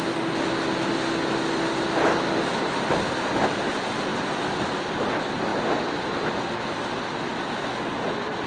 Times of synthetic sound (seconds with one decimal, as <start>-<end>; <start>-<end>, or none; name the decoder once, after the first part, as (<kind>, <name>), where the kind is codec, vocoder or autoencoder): none